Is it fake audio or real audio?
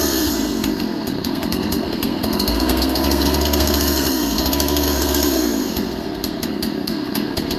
fake